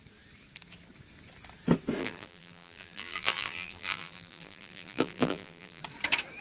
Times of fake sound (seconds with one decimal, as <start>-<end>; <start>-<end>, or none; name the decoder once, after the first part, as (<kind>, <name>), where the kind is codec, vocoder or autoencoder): 2.0-5.8 (vocoder, BigVGAN v2)